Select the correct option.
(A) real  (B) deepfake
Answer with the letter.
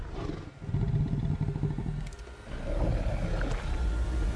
A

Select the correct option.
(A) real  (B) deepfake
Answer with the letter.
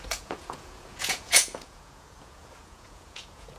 B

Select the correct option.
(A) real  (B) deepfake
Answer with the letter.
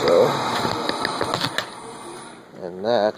A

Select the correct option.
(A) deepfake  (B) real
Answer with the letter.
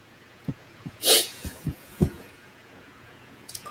A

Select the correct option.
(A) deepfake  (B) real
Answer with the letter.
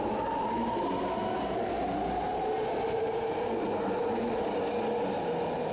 B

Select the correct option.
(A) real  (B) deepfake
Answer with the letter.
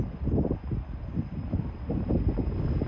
A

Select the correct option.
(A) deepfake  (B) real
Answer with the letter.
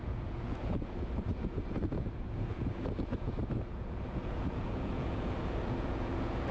A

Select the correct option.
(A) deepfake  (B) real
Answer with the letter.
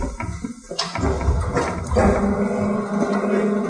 B